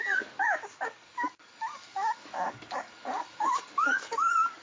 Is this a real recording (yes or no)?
no